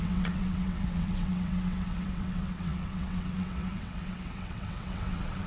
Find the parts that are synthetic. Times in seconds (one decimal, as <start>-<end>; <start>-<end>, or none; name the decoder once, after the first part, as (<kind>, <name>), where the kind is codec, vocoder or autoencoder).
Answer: 0.0-5.5 (vocoder, WaveNeXt)